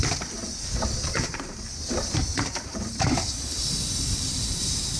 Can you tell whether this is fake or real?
fake